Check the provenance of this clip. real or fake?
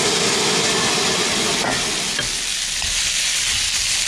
real